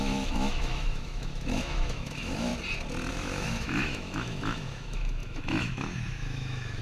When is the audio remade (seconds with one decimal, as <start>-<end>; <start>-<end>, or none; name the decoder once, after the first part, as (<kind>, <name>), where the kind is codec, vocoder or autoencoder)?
0.0-2.5 (autoencoder, DAC-VAE); 3.1-6.8